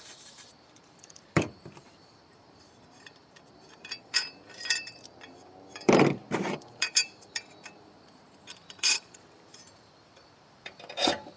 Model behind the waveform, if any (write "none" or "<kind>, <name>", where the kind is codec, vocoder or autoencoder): vocoder, BigVGAN v2